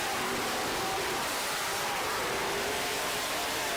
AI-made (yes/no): yes